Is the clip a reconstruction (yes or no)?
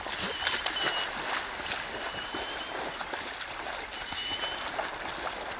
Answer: no